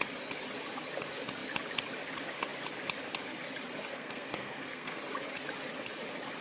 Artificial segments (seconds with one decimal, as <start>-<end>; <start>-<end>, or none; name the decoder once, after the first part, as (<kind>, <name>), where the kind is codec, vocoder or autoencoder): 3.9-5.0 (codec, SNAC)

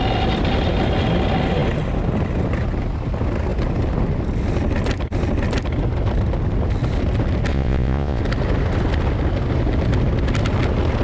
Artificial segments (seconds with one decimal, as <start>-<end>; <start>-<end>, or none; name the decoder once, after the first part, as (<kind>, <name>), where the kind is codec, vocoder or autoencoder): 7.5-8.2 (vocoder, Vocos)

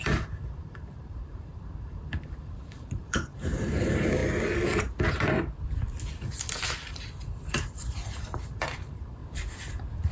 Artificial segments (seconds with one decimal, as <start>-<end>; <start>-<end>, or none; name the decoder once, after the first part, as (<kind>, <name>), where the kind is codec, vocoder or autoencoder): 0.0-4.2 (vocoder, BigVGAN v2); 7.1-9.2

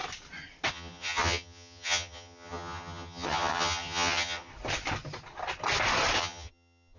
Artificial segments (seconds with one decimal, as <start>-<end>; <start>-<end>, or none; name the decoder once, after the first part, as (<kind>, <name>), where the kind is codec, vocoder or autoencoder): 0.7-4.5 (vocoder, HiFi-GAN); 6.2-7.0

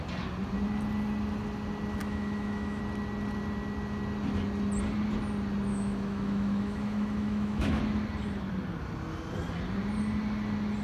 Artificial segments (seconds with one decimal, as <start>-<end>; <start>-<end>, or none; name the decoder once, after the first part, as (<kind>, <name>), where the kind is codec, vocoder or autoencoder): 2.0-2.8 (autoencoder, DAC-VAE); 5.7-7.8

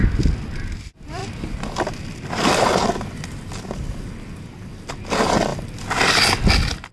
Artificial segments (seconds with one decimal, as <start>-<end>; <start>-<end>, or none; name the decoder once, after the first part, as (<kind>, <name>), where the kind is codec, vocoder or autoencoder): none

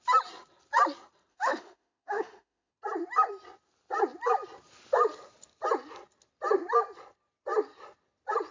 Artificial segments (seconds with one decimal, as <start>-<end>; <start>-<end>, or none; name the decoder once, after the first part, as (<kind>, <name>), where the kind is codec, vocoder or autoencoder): 1.3-2.7 (autoencoder, DAC-VAE)

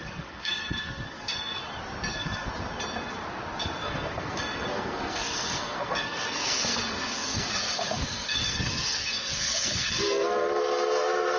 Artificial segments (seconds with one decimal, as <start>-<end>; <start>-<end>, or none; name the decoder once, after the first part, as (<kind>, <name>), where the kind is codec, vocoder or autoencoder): 0.0-1.6 (codec, SNAC); 2.1-2.5; 3.6-11.4